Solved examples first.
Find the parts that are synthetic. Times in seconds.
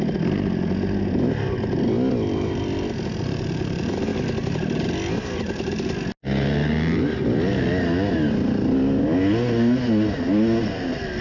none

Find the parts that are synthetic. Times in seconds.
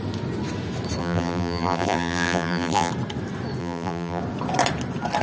1.0-2.9; 3.6-4.2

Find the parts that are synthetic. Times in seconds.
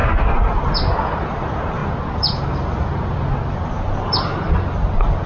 1.1-1.8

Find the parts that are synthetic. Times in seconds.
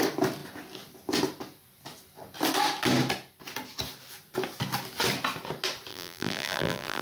5.9-7.0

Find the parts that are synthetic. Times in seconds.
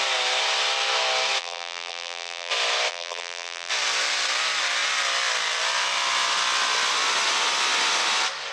1.4-2.5; 2.9-3.7